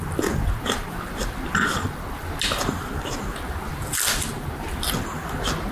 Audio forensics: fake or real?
real